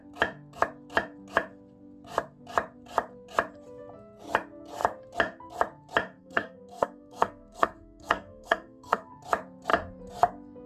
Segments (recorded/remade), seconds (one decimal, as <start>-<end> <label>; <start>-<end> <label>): 0.0-6.2 recorded; 6.2-9.1 remade; 9.1-10.7 recorded